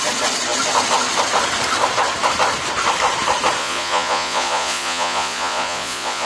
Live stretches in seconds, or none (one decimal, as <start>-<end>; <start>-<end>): 0.0-3.6